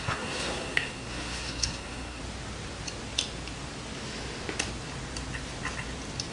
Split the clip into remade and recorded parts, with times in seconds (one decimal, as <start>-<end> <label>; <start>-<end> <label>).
0.0-2.2 remade; 2.2-6.3 recorded